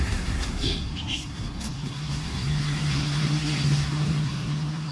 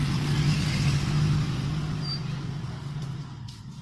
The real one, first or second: second